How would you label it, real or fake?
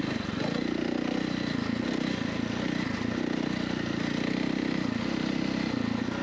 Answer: real